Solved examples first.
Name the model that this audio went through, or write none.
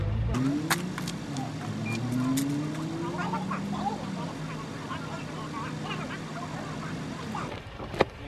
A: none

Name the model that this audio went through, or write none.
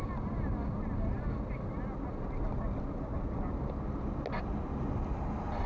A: none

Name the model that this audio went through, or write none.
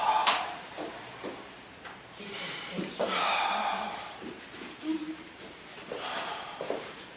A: vocoder, BigVGAN v2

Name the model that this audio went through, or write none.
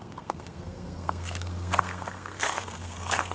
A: codec, SNAC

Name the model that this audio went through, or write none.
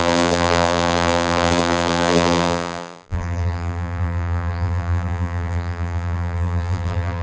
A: vocoder, BigVGAN v2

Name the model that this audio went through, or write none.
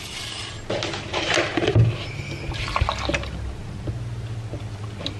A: none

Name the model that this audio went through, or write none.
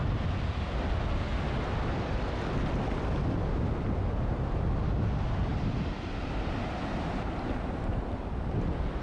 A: none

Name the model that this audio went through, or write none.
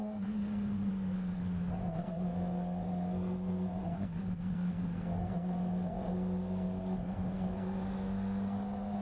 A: codec, SNAC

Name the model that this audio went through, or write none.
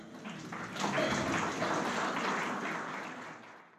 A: none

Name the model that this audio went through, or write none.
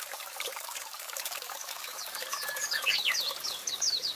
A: codec, DAC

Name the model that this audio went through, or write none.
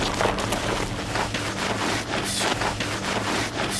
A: none